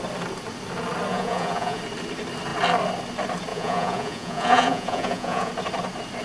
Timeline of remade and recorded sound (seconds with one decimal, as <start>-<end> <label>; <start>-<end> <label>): 0.0-1.1 recorded; 1.1-1.8 remade; 1.8-3.5 recorded; 3.5-5.5 remade; 5.5-6.2 recorded